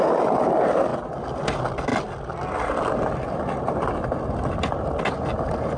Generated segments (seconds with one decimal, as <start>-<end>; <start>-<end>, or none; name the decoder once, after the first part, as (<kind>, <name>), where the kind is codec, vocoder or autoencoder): none